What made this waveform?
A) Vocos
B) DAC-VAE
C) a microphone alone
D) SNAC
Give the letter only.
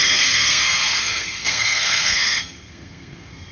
D